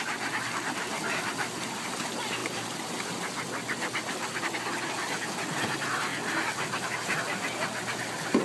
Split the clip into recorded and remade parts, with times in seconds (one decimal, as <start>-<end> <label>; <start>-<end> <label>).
0.0-2.4 recorded; 2.4-4.4 remade; 4.4-8.4 recorded